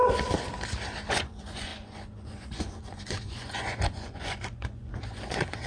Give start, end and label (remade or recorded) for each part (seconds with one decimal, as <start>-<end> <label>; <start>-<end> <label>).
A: 0.0-1.1 recorded; 1.1-5.7 remade